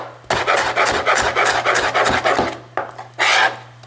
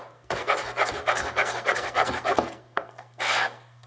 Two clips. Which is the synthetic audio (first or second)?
second